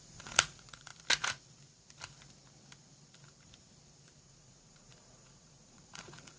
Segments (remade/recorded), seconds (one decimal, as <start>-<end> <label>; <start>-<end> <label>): 0.0-0.9 remade; 0.9-4.2 recorded; 4.2-6.4 remade